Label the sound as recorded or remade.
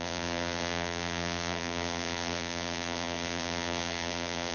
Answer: remade